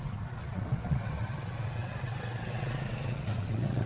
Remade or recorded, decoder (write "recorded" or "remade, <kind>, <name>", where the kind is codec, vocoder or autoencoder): remade, vocoder, WaveNeXt